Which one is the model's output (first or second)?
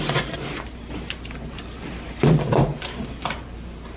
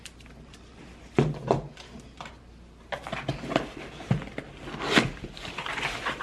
first